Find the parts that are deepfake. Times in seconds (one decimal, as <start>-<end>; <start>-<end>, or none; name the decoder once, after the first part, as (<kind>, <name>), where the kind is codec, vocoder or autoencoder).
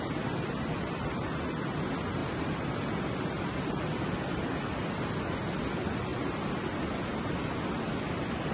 2.2-3.7 (vocoder, BigVGAN v2)